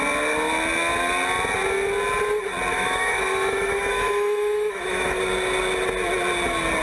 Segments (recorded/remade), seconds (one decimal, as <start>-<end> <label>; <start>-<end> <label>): 0.0-2.7 recorded; 2.7-5.2 remade; 5.2-6.8 recorded